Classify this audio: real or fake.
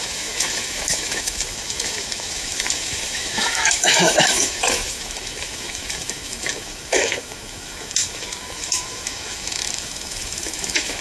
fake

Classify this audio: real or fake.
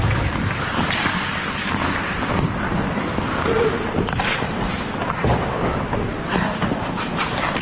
real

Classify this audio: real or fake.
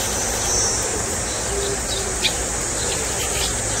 real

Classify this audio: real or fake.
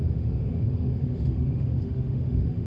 fake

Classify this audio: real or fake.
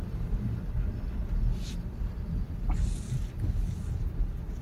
real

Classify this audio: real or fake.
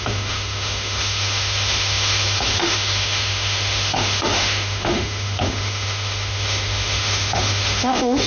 fake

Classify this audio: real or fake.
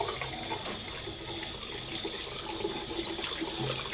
real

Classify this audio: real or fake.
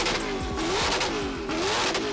real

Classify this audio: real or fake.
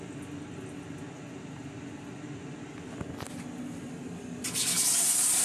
real